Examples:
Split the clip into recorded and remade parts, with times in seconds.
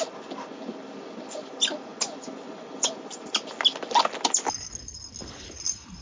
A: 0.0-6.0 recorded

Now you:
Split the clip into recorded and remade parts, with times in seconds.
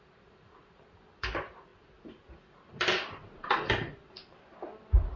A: 0.0-5.2 recorded